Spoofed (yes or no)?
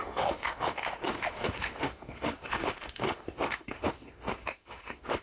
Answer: yes